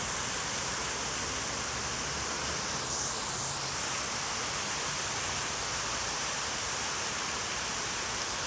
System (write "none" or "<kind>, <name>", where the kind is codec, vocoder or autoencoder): none